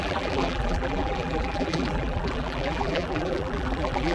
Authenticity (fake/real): fake